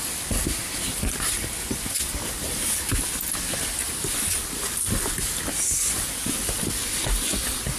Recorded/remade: recorded